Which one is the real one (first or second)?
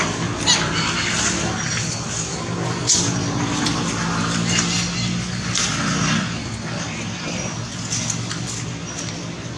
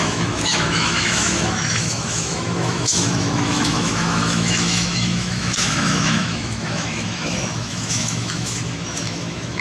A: first